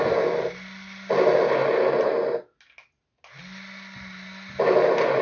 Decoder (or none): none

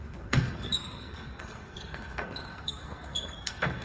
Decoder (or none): codec, SNAC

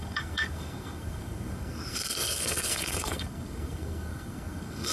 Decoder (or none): codec, SNAC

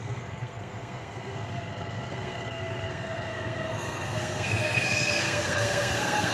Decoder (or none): codec, SNAC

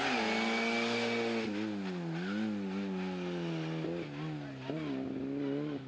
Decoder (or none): none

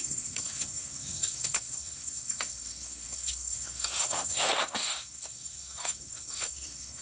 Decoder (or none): codec, SNAC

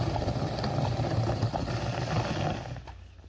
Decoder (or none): none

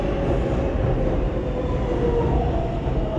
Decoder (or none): none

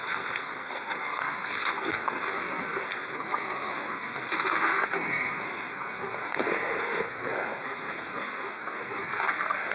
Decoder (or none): codec, SNAC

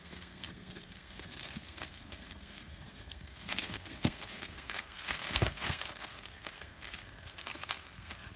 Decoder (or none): codec, SNAC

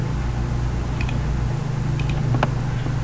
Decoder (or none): none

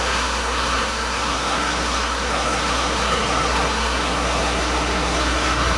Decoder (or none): codec, SNAC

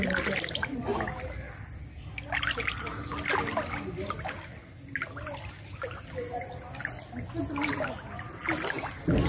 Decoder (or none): none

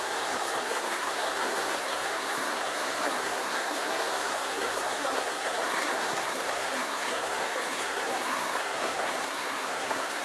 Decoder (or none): codec, SNAC